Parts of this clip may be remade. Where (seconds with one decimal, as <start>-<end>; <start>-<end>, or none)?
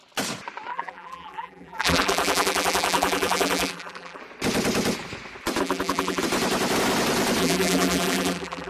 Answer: 0.7-4.2; 5.6-6.2; 7.4-8.7